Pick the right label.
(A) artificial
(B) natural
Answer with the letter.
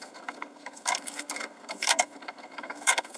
A